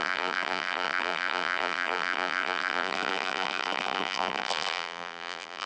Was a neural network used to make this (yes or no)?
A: yes